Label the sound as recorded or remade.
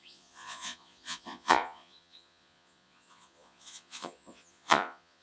remade